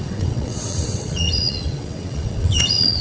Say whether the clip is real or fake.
fake